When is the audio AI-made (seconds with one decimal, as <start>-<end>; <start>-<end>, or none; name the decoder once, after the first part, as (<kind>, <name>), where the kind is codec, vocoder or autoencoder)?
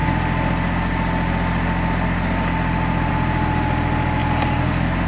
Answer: none